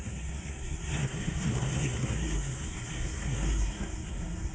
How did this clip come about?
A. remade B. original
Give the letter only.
A